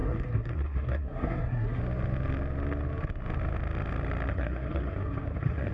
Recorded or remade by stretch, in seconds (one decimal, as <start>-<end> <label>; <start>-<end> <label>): 0.0-1.8 remade; 1.8-4.3 recorded; 4.3-5.7 remade

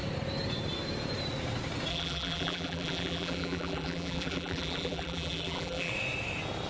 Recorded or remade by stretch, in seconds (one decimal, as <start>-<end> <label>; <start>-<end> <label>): 0.0-1.9 recorded; 1.9-5.9 remade; 5.9-6.7 recorded

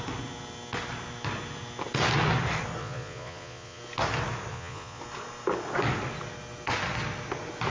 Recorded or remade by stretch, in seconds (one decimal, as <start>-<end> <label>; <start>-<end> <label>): 0.0-2.8 recorded; 2.8-3.8 remade; 3.8-4.5 recorded; 4.5-5.0 remade; 5.0-7.7 recorded

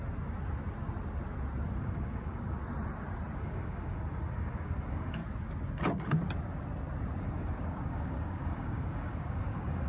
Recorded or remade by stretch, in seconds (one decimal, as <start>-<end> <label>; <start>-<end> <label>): 0.0-1.8 recorded; 1.8-2.6 remade; 2.6-3.4 recorded; 3.4-5.2 remade; 5.2-7.2 recorded; 7.2-9.9 remade

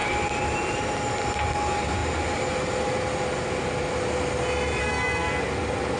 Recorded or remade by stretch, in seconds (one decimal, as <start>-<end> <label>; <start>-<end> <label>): 0.0-4.8 recorded; 4.8-5.4 remade; 5.4-6.0 recorded

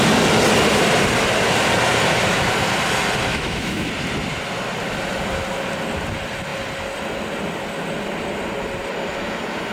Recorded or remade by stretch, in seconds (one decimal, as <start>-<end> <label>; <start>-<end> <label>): 0.0-3.3 recorded; 3.3-3.9 remade; 3.9-9.7 recorded